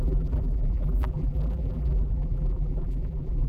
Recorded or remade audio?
remade